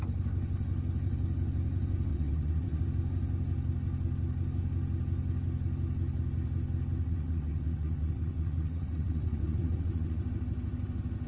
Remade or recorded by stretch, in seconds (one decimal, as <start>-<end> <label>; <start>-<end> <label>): 0.0-2.1 recorded; 2.1-2.8 remade; 2.8-7.0 recorded; 7.0-10.2 remade; 10.2-11.3 recorded